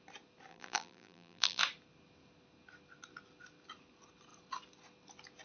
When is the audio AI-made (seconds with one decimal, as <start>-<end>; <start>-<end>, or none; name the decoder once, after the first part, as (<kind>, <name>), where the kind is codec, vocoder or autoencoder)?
0.5-1.6 (vocoder, BigVGAN v2)